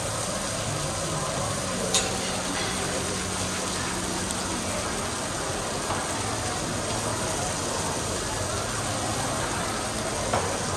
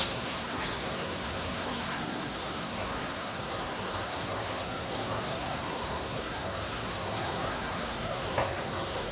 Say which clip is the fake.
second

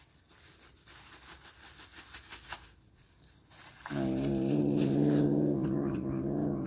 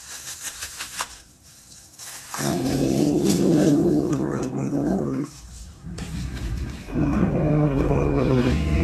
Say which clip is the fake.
second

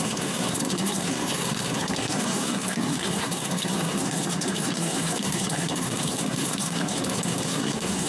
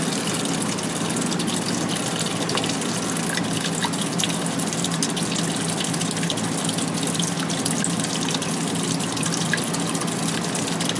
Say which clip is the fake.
first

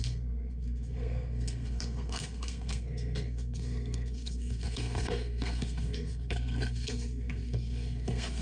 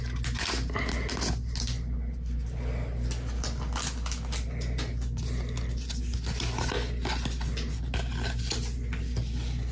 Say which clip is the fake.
first